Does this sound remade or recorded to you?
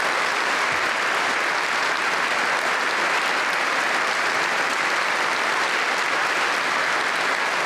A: recorded